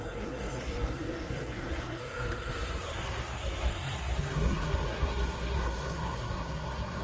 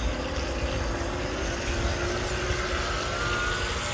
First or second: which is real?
second